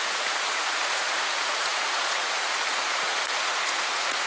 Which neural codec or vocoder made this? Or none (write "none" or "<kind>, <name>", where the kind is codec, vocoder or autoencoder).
vocoder, Vocos